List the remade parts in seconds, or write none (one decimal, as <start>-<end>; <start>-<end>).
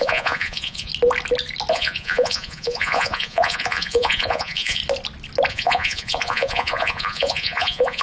0.0-0.9; 1.7-4.8; 5.5-8.0